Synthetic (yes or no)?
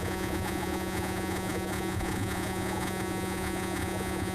yes